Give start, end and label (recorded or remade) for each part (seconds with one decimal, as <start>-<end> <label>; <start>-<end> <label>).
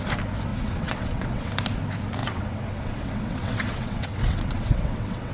0.0-0.5 recorded; 0.5-1.5 remade; 1.5-2.2 recorded; 2.2-5.3 remade